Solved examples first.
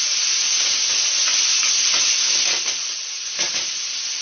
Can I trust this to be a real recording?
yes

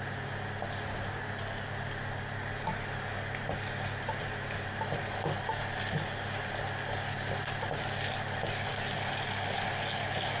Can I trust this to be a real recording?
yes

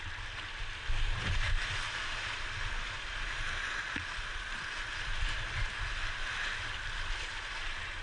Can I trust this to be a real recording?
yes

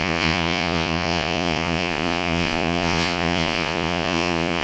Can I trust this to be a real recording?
no